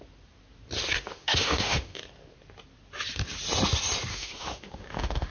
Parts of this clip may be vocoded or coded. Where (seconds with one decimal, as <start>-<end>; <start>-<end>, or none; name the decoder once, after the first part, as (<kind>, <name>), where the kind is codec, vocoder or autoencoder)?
1.1-2.0 (autoencoder, DAC-VAE); 4.1-5.3